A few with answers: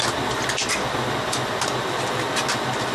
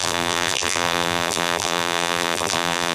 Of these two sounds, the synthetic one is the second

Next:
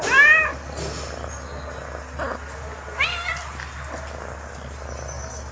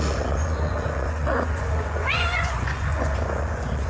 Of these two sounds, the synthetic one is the second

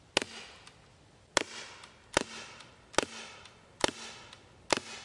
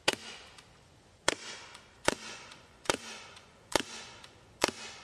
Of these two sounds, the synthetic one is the second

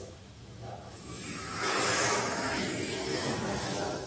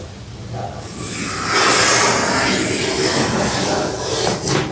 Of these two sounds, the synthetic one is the first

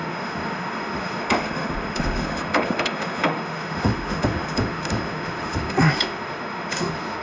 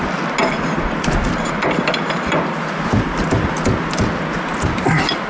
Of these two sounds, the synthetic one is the first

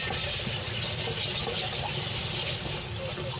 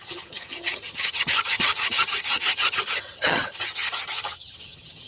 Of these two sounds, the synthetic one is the second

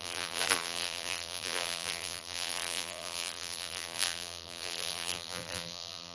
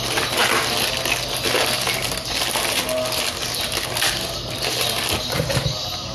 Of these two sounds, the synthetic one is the first